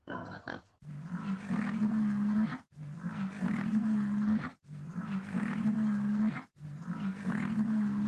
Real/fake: fake